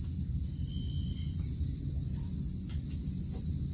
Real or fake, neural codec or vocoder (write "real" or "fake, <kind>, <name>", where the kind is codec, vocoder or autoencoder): real